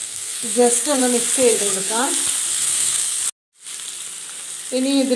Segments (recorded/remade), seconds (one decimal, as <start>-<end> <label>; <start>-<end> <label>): 0.0-1.0 remade; 1.0-1.5 recorded; 1.5-2.1 remade; 2.1-2.5 recorded; 2.5-3.2 remade; 3.2-5.2 recorded